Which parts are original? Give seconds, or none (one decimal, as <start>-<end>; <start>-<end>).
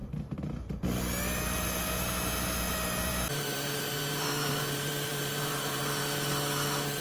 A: 0.0-3.1; 5.8-7.0